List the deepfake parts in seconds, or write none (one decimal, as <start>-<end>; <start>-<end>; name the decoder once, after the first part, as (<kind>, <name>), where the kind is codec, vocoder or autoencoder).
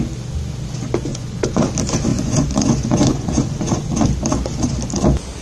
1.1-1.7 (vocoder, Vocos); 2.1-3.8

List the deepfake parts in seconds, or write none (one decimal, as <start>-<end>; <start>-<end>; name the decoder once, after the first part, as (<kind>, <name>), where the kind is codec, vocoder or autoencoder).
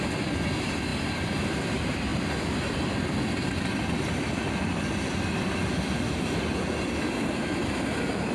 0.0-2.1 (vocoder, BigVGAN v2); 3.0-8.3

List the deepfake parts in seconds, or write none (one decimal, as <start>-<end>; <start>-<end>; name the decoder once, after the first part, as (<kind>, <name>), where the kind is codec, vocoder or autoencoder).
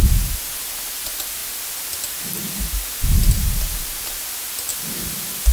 none